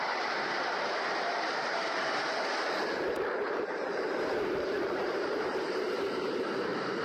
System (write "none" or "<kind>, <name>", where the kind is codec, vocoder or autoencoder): vocoder, BigVGAN v2